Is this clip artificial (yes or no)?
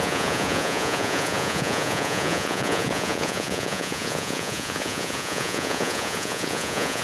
yes